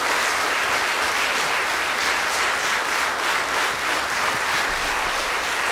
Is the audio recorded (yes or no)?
yes